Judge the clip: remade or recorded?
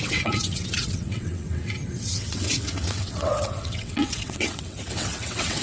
remade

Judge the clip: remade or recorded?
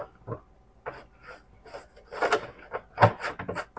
recorded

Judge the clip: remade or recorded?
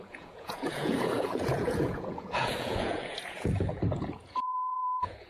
remade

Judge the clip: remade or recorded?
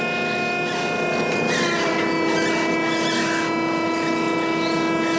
recorded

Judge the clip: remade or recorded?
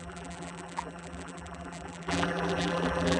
remade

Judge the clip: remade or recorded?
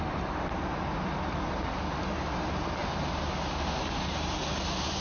recorded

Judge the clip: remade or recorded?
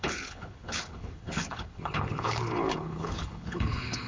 remade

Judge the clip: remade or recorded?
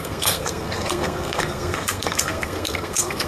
remade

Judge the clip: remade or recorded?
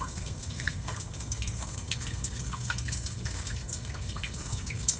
remade